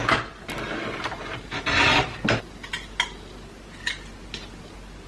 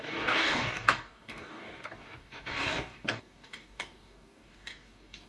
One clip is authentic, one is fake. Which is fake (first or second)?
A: second